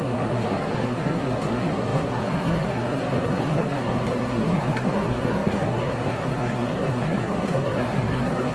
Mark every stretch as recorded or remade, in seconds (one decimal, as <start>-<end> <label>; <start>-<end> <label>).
0.0-8.5 remade